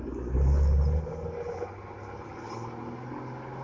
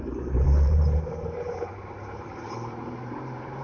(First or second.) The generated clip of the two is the second